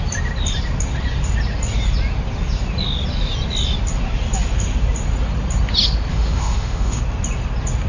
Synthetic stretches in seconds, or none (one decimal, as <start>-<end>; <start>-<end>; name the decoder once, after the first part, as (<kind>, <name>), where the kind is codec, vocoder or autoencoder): 6.1-7.0 (autoencoder, DAC-VAE)